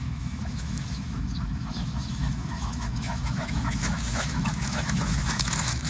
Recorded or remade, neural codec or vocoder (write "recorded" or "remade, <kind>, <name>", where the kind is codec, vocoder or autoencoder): remade, autoencoder, DAC-VAE